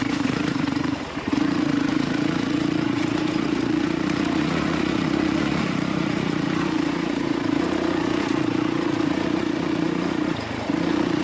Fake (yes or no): yes